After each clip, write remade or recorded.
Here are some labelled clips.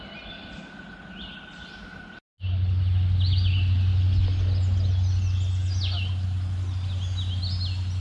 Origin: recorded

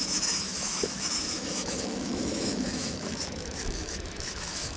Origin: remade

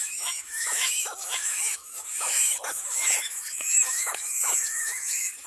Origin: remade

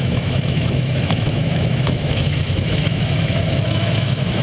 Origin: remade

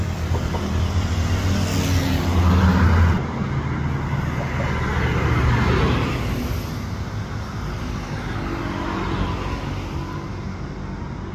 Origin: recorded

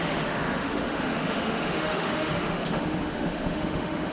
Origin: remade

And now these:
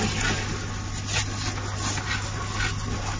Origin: recorded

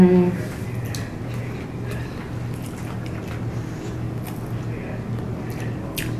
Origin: recorded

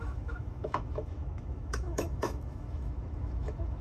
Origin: remade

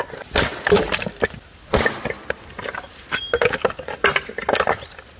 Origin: recorded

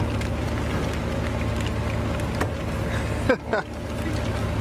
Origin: recorded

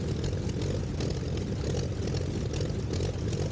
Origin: recorded